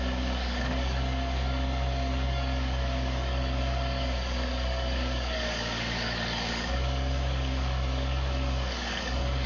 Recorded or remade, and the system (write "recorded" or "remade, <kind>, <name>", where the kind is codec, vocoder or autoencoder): remade, codec, DAC